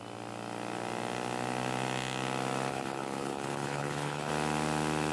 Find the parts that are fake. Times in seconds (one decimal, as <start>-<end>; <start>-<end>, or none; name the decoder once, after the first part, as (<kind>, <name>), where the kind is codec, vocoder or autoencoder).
2.7-4.3 (codec, HILCodec)